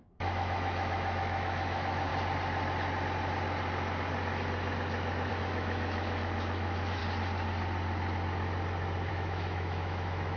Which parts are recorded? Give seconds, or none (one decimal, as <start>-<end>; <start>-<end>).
2.1-5.3; 7.0-9.1